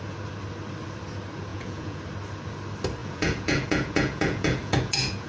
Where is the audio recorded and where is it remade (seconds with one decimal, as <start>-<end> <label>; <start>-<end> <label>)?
0.0-1.5 recorded; 1.5-2.0 remade; 2.0-3.0 recorded; 3.0-5.3 remade